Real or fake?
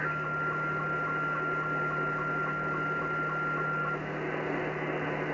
real